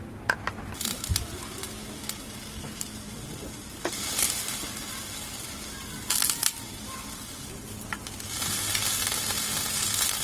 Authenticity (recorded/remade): recorded